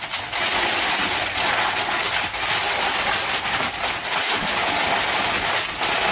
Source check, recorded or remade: recorded